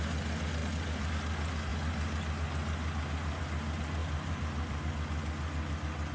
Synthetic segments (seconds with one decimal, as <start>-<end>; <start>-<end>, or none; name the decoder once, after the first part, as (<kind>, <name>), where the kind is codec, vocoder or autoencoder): 4.0-4.9 (vocoder, BigVGAN v2)